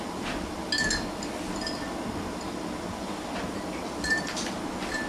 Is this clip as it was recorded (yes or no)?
yes